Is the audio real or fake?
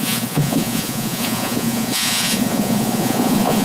fake